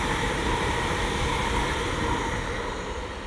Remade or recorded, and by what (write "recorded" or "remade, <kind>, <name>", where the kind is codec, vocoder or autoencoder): recorded